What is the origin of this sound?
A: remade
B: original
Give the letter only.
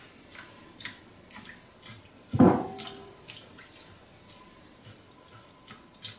B